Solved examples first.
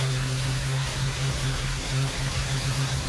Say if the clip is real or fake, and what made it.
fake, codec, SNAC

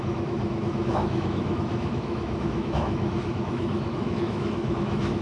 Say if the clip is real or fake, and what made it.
fake, autoencoder, DAC-VAE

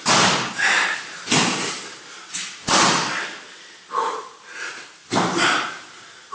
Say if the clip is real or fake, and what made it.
fake, vocoder, BigVGAN v2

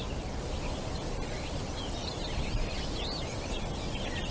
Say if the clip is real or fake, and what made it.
real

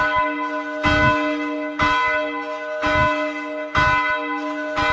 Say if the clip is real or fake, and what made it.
real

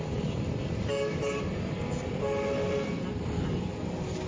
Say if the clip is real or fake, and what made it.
real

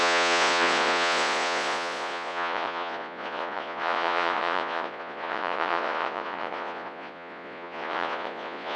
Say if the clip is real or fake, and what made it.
fake, vocoder, Vocos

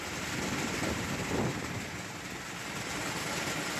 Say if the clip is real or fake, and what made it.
fake, vocoder, BigVGAN v2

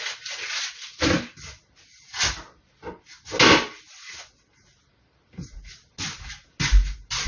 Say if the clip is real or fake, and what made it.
real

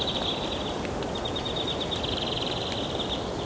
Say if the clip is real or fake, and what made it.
real